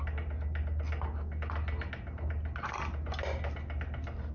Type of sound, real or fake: real